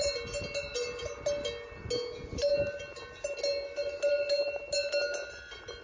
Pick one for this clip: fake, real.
real